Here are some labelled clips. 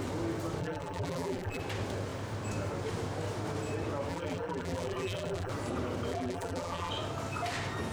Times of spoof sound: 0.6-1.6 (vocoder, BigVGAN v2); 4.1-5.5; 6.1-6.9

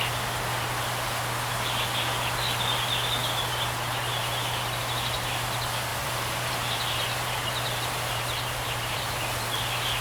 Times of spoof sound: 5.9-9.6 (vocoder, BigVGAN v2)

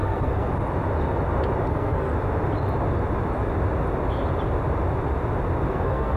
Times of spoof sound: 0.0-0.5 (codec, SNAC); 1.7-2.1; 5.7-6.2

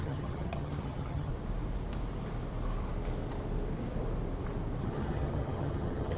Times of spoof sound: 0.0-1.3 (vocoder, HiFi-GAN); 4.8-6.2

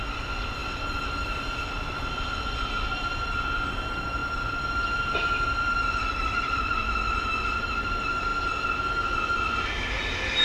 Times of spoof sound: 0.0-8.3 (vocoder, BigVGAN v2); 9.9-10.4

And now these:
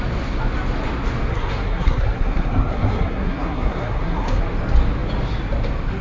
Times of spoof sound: 1.3-4.4 (codec, SNAC)

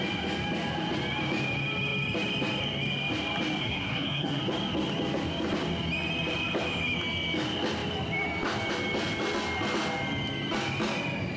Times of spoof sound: 3.6-4.4 (codec, SNAC)